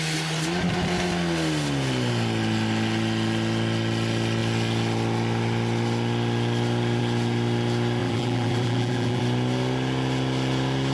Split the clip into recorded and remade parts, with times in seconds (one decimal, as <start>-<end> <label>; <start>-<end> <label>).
0.0-8.0 recorded; 8.0-9.2 remade; 9.2-10.9 recorded